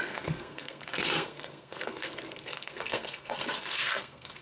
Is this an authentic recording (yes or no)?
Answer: no